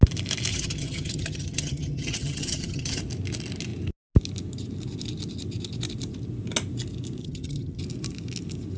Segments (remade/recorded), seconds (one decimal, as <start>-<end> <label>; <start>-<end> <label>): 0.0-0.5 recorded; 0.5-3.0 remade; 3.0-7.2 recorded; 7.2-7.8 remade; 7.8-8.8 recorded